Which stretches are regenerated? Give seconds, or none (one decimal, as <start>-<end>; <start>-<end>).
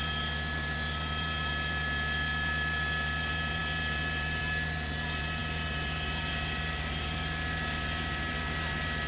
none